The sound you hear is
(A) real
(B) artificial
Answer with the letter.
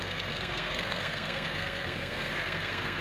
B